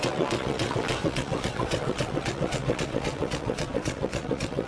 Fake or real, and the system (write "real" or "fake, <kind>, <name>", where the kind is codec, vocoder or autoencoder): fake, vocoder, WaveNeXt